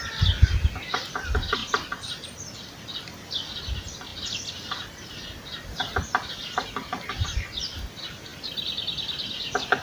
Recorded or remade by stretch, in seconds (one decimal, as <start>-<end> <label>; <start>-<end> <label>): 0.0-1.6 recorded; 1.6-3.1 remade; 3.1-4.1 recorded; 4.1-4.8 remade; 4.8-8.3 recorded; 8.3-9.4 remade; 9.4-9.8 recorded